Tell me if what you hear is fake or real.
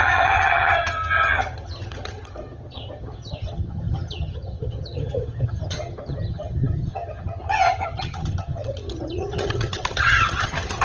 fake